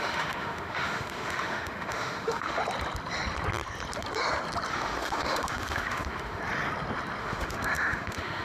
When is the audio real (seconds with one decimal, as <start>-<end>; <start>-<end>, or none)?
2.6-4.7; 6.4-7.2

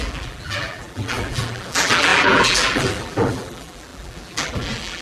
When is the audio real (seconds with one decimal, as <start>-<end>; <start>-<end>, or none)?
none

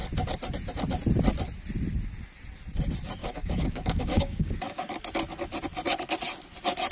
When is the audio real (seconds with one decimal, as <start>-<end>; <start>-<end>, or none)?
0.0-3.2; 4.9-6.9

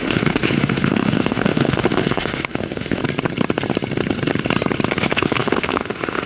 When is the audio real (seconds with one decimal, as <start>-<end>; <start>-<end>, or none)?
3.0-5.0

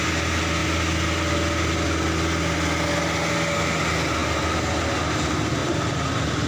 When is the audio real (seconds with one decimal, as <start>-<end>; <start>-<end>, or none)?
0.0-5.6; 6.1-6.5